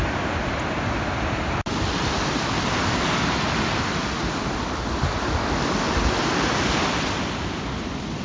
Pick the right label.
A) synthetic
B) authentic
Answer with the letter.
B